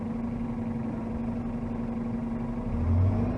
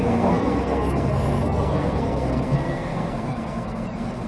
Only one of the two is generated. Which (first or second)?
second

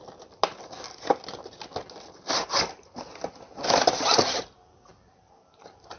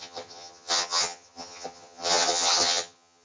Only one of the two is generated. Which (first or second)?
second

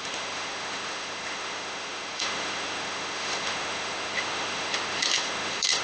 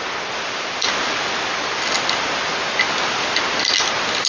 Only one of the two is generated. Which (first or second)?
first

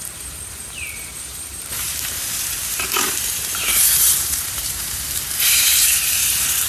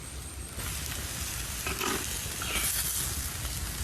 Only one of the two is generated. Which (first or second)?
first